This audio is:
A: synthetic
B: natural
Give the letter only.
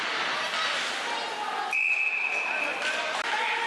B